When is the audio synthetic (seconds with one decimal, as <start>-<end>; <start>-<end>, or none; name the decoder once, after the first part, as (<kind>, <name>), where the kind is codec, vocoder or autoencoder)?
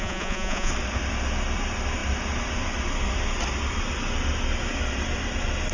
0.0-0.7 (vocoder, Vocos)